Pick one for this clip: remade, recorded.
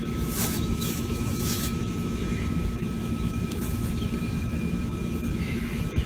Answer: remade